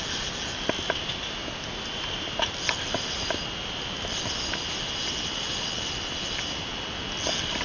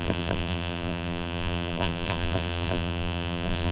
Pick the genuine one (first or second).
first